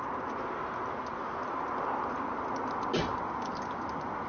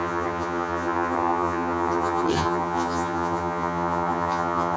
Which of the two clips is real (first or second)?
first